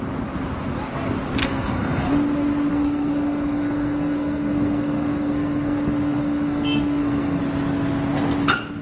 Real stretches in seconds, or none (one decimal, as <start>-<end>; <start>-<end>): 0.0-1.4; 2.1-2.7; 7.4-8.8